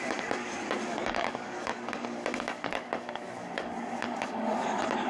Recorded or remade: remade